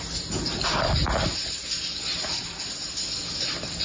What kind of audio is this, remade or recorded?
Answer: recorded